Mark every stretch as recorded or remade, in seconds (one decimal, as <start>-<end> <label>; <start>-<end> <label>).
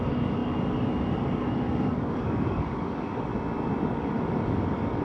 0.0-3.3 remade; 3.3-3.9 recorded; 3.9-5.0 remade